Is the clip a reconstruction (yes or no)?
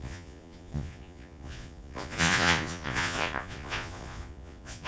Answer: yes